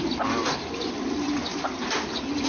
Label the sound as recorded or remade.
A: recorded